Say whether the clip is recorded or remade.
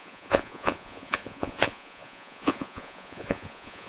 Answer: remade